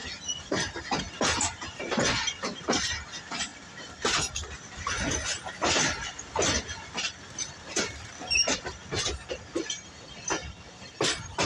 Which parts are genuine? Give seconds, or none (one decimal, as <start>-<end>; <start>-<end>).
8.8-10.7

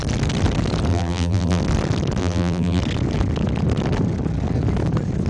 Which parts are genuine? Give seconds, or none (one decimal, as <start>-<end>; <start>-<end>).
0.0-0.9; 1.6-2.2; 2.8-5.3

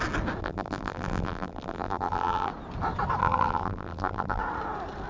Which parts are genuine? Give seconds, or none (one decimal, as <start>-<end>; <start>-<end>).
0.0-0.4; 2.5-3.2; 4.4-5.1

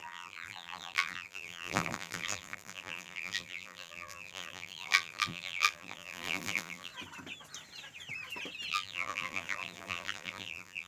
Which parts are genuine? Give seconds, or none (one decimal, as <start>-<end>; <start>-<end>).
6.9-8.7

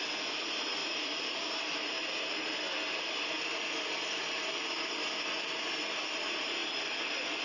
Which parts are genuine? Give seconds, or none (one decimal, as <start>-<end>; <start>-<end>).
0.0-0.8; 1.6-3.5; 5.6-7.4

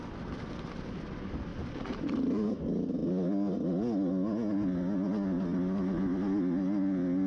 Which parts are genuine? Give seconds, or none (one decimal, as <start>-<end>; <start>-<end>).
0.0-1.5; 2.6-7.3

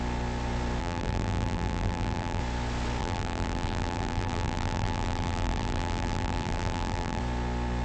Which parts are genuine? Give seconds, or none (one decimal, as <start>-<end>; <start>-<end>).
0.0-0.8; 2.4-3.0; 7.2-7.8

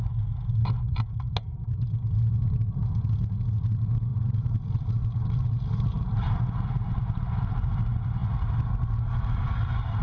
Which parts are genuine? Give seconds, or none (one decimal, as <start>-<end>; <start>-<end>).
0.0-1.5; 2.3-4.1; 7.7-10.0